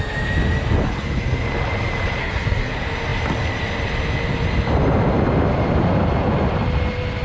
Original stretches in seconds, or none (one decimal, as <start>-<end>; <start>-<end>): 0.0-2.2; 2.7-7.2